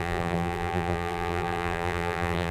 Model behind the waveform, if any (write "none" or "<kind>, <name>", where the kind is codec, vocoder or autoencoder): vocoder, BigVGAN v2